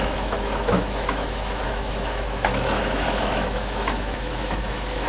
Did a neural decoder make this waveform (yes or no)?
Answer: yes